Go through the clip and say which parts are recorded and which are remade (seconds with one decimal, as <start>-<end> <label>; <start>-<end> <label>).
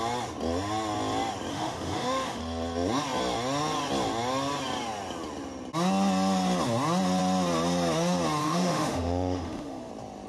0.0-1.5 recorded; 1.5-2.4 remade; 2.4-8.4 recorded; 8.4-9.9 remade; 9.9-10.3 recorded